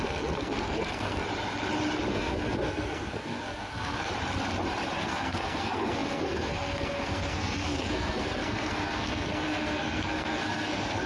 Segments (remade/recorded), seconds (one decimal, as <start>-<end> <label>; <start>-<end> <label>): 0.0-1.2 remade; 1.2-2.1 recorded; 2.1-4.1 remade; 4.1-5.0 recorded; 5.0-11.1 remade